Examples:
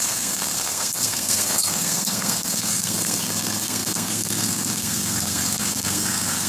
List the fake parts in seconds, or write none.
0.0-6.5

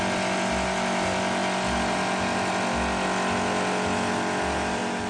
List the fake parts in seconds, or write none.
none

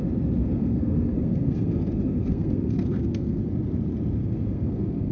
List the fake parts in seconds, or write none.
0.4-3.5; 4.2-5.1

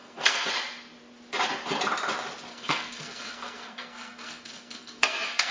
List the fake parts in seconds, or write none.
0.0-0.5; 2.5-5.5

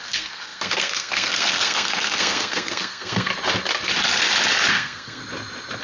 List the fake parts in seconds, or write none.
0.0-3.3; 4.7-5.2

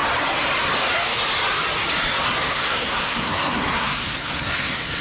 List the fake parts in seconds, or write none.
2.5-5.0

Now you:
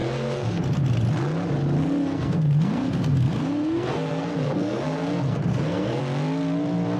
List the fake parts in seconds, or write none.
0.0-0.6; 1.8-6.0